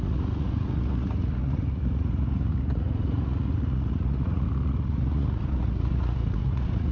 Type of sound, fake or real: fake